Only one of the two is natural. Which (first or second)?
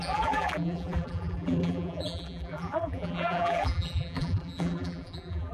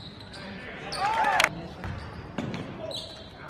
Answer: second